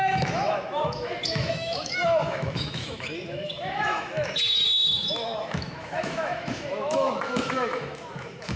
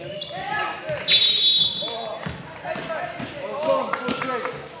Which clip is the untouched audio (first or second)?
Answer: second